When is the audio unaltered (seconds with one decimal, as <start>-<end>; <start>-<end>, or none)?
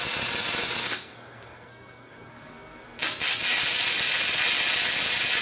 0.0-0.8; 3.0-5.4